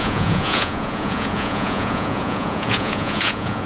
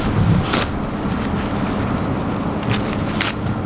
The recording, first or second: second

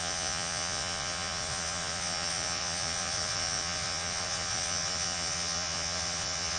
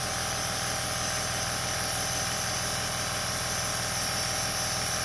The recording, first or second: second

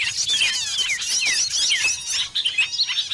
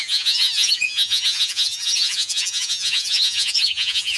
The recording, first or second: first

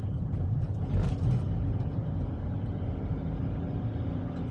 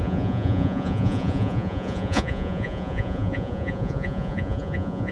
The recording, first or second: first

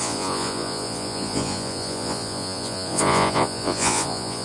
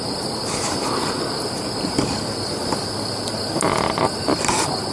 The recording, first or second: second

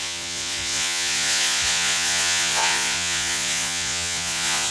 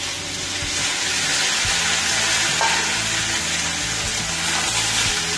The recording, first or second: second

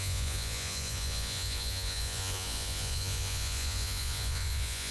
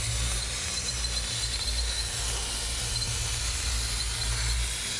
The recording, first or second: second